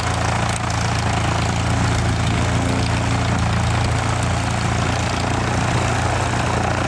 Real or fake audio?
real